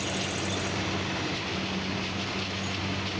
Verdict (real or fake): real